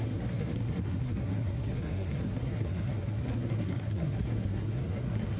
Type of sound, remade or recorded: remade